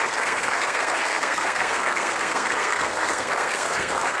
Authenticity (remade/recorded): remade